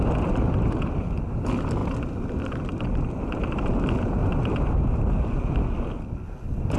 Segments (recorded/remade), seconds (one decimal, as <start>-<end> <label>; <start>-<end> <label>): 0.0-6.8 recorded